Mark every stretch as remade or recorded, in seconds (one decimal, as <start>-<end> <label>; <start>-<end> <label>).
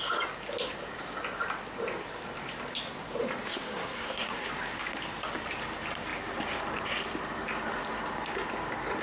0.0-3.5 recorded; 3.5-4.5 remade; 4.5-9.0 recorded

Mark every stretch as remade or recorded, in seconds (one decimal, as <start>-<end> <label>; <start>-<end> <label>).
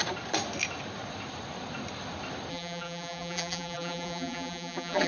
0.0-2.5 recorded; 2.5-5.1 remade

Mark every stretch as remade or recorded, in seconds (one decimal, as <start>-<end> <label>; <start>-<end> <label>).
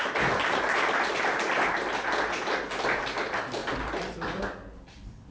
0.0-5.3 recorded